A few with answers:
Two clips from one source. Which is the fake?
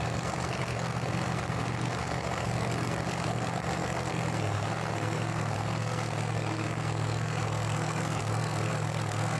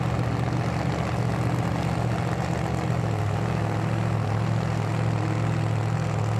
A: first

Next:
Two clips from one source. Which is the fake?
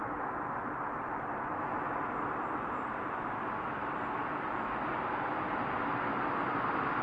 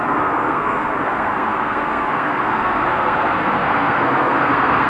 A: second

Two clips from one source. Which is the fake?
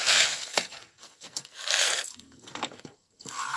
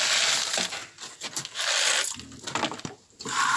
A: first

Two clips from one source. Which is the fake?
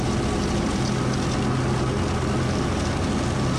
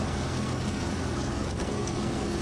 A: second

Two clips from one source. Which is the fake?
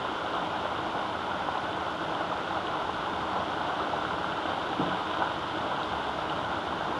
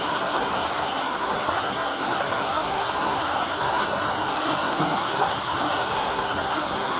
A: second